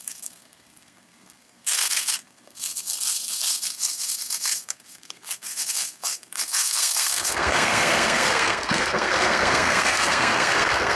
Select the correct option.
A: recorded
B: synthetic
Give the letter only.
B